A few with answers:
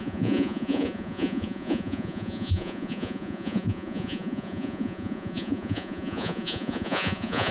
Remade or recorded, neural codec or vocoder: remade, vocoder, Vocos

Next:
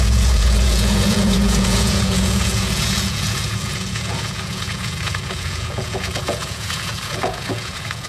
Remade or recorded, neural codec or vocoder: remade, vocoder, Vocos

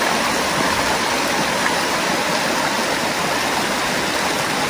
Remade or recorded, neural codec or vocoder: recorded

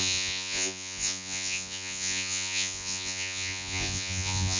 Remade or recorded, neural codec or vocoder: remade, vocoder, Vocos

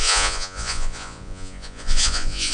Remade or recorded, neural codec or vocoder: remade, vocoder, Vocos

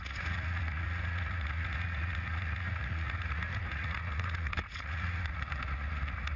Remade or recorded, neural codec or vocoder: remade, vocoder, Vocos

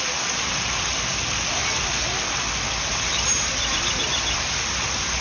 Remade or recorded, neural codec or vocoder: recorded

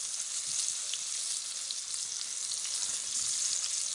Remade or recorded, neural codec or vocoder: recorded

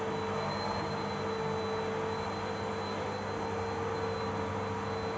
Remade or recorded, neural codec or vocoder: recorded